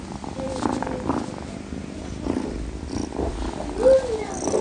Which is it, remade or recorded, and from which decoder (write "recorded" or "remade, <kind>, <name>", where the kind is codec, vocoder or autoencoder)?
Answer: recorded